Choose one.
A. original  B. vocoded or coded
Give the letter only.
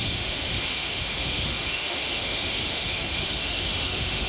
B